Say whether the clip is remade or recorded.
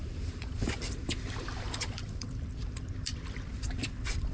remade